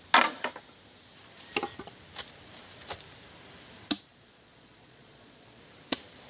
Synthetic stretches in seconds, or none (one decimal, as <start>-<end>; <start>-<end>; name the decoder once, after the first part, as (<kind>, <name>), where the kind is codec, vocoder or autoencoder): 4.1-5.6 (vocoder, Vocos)